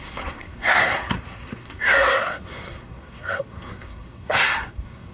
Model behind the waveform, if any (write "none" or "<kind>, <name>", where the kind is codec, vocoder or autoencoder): codec, SNAC